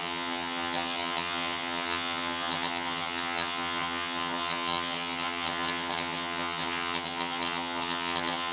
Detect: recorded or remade remade